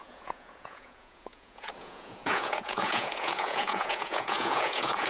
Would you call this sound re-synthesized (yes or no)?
yes